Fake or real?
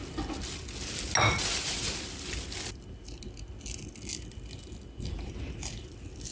real